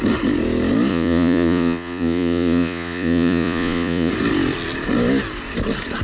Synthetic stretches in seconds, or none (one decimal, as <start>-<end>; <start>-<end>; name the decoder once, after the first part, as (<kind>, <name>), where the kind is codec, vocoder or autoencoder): 0.9-4.1 (vocoder, Vocos)